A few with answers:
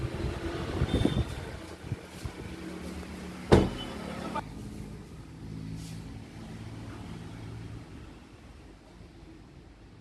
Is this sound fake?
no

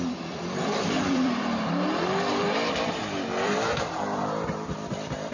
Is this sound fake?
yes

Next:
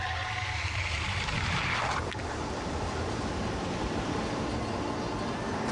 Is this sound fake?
no